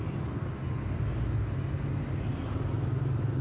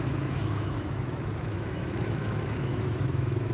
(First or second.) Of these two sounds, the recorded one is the first